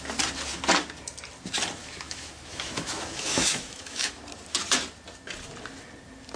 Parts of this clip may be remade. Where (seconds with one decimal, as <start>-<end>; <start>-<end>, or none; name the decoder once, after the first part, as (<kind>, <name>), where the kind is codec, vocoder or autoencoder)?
1.8-4.2 (autoencoder, DAC-VAE)